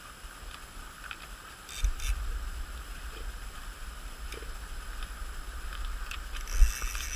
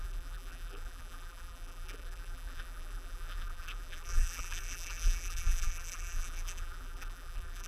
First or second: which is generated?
second